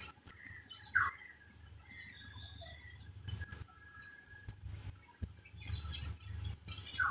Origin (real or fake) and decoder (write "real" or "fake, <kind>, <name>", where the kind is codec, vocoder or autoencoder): real